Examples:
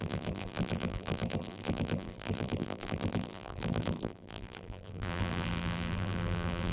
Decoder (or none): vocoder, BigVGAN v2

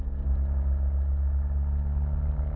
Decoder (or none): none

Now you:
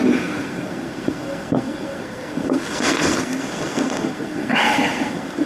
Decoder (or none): codec, SNAC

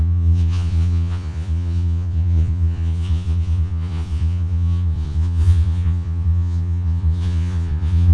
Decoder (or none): vocoder, Vocos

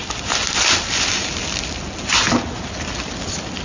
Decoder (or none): none